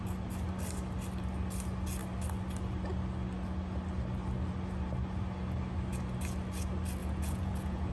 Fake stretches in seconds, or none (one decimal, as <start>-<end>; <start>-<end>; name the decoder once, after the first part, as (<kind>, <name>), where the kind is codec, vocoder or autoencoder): 7.0-7.9 (vocoder, Vocos)